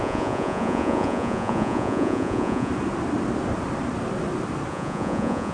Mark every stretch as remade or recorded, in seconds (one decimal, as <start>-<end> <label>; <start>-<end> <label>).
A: 0.0-2.7 remade; 2.7-4.7 recorded; 4.7-5.5 remade